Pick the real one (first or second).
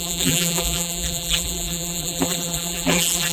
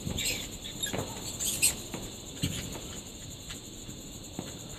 second